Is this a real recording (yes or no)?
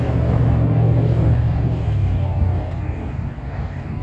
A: no